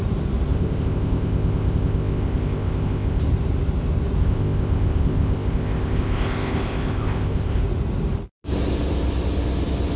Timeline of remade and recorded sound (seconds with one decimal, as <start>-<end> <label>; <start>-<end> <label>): 0.0-0.5 recorded; 0.5-3.2 remade; 3.2-4.2 recorded; 4.2-7.6 remade; 7.6-10.0 recorded